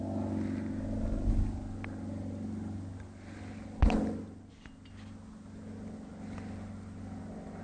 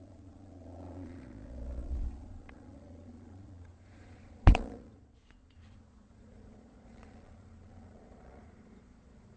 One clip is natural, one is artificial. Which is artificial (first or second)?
second